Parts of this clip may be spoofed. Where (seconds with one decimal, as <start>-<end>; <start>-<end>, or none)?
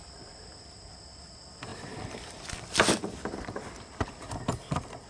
none